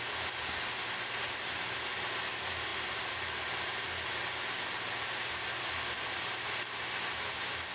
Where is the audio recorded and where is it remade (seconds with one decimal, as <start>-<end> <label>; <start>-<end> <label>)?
0.0-7.7 recorded